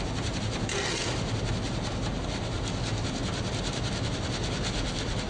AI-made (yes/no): no